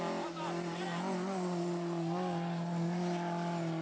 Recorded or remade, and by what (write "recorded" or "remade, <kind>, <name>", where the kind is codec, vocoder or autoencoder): recorded